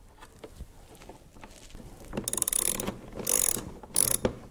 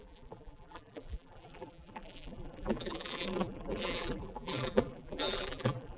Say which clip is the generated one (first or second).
second